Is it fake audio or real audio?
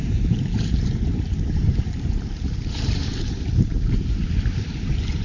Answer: fake